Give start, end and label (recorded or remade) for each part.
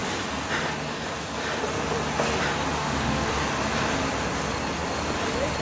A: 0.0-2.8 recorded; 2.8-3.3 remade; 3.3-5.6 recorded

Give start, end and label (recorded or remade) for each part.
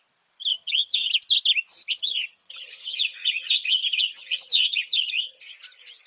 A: 0.0-0.5 recorded; 0.5-1.1 remade; 1.1-1.7 recorded; 1.7-5.4 remade; 5.4-6.1 recorded